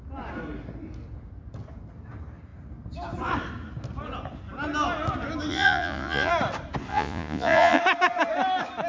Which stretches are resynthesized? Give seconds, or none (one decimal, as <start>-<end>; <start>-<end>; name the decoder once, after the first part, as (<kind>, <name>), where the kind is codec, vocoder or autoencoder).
5.5-6.3 (vocoder, Vocos); 6.9-7.8